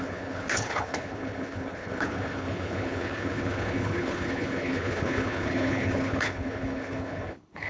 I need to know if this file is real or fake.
fake